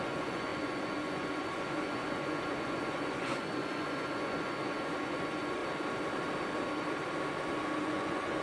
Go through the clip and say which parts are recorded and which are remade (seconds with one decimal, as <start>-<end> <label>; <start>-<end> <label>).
0.0-5.6 remade; 5.6-7.8 recorded; 7.8-8.4 remade